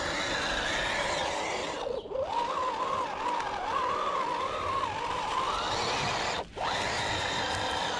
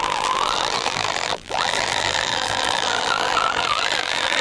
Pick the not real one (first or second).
second